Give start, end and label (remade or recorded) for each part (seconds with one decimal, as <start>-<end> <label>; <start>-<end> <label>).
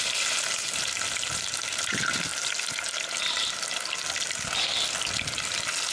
0.0-2.3 remade; 2.3-5.9 recorded